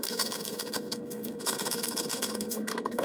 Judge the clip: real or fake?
fake